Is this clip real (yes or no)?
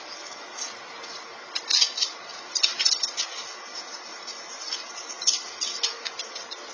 yes